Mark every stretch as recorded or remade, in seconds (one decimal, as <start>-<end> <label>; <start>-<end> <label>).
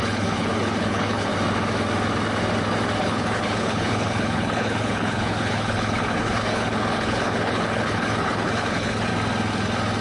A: 0.0-1.3 remade; 1.3-3.0 recorded; 3.0-9.1 remade; 9.1-10.0 recorded